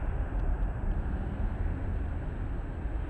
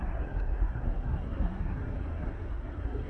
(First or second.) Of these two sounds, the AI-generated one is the second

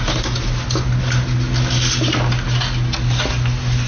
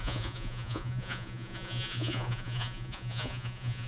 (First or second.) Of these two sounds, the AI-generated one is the second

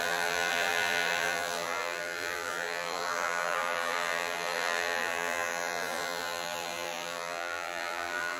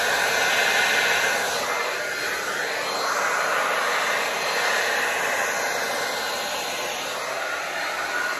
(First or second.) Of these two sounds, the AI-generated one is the first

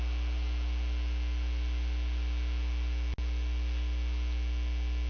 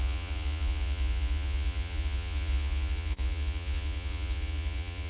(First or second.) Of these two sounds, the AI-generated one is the second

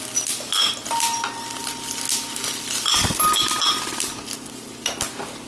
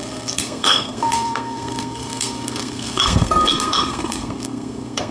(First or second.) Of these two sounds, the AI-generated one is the second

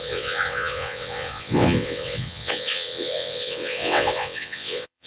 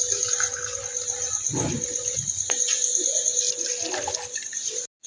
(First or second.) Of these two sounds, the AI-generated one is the first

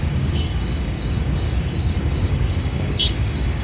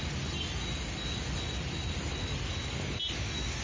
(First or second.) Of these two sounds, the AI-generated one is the first